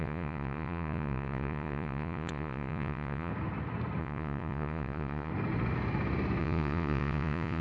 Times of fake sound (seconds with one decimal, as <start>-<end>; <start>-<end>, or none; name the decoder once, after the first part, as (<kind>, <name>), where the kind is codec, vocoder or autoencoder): 0.0-3.3 (vocoder, Vocos); 4.0-5.3; 6.4-7.6